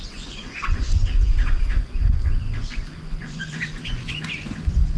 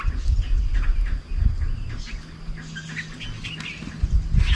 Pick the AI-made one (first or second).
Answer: first